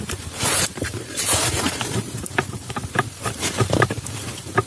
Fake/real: fake